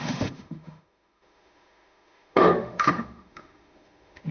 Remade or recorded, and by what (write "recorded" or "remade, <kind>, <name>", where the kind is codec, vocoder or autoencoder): remade, autoencoder, DAC-VAE